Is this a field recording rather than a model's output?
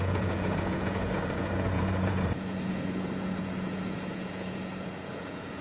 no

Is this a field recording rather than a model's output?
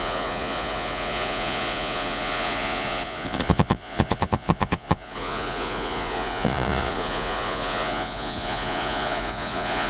no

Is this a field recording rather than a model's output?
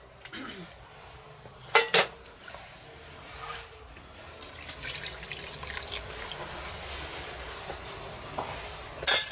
yes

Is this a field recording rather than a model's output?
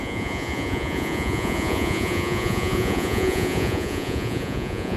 no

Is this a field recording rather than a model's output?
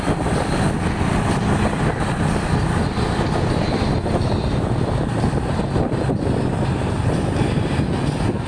yes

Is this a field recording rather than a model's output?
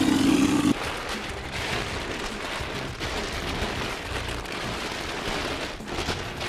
yes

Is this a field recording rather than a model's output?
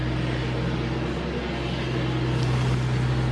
yes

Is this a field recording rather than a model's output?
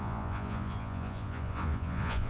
no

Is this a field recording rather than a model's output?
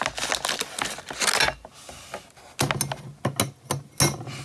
yes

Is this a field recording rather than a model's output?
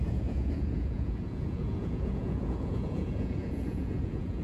no